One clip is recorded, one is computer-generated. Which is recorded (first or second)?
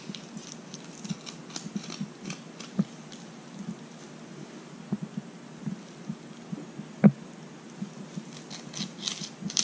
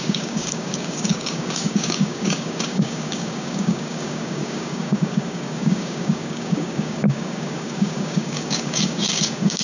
first